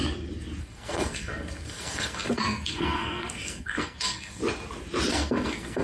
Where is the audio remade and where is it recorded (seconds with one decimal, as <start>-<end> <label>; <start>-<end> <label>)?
0.0-0.6 recorded; 0.6-4.4 remade; 4.4-5.1 recorded; 5.1-5.8 remade